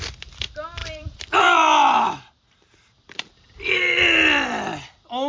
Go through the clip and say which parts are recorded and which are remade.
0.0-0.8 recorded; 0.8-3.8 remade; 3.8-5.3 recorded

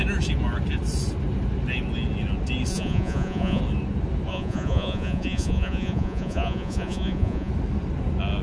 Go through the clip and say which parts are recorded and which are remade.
0.0-2.7 recorded; 2.7-3.6 remade; 3.6-4.3 recorded; 4.3-7.5 remade; 7.5-8.4 recorded

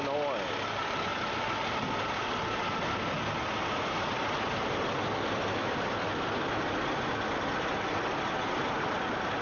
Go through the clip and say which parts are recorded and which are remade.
0.0-9.4 recorded

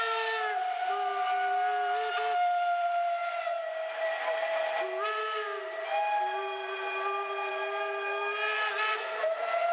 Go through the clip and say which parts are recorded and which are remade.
0.0-9.7 recorded

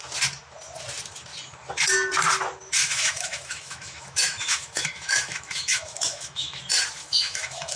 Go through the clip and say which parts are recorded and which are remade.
0.0-2.8 recorded; 2.8-6.6 remade; 6.6-7.0 recorded; 7.0-7.8 remade

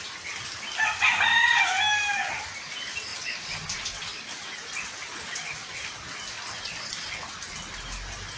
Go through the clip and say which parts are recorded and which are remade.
0.0-8.4 recorded

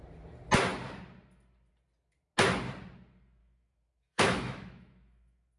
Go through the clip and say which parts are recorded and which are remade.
0.0-3.4 recorded; 3.4-5.6 remade